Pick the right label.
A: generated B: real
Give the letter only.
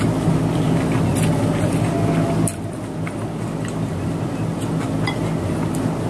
B